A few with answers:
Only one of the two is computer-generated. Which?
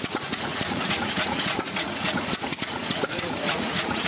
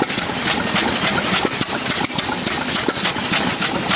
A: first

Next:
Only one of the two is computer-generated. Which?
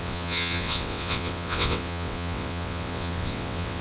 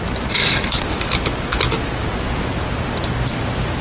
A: first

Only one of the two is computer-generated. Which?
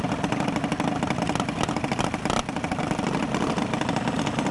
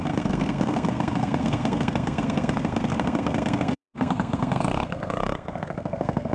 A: second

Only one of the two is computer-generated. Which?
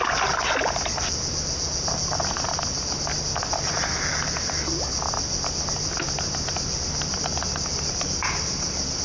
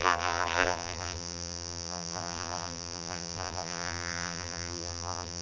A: second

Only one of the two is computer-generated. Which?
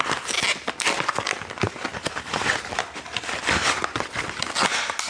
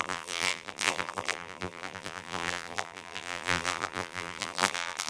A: second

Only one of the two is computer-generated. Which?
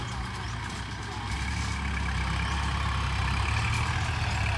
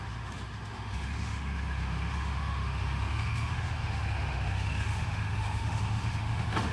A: second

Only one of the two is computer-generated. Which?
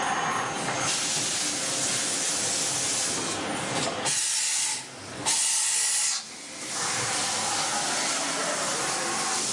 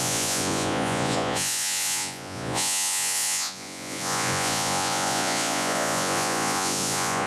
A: second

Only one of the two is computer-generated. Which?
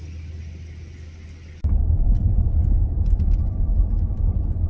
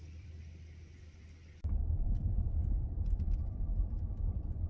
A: second